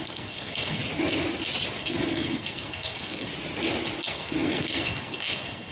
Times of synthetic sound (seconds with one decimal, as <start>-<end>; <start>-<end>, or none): 0.0-0.8; 1.8-3.3; 4.0-5.7